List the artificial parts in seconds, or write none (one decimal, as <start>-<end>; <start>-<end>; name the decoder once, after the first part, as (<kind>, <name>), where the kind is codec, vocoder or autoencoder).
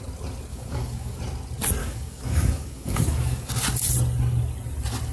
0.5-1.2 (codec, DAC); 1.8-3.5